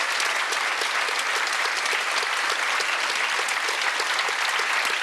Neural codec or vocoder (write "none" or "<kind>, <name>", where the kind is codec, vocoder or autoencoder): none